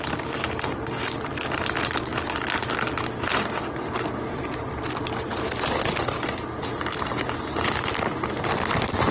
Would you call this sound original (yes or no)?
yes